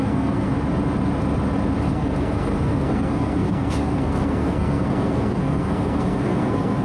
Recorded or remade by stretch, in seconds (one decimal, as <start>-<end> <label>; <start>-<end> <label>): 0.0-0.5 remade; 0.5-1.9 recorded; 1.9-6.8 remade